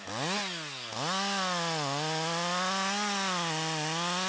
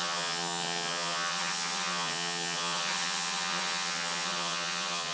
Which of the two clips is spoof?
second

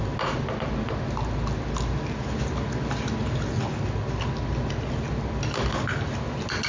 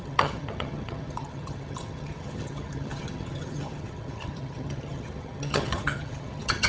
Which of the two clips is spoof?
second